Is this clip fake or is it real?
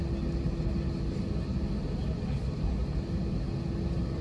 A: real